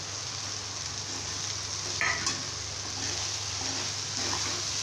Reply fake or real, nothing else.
real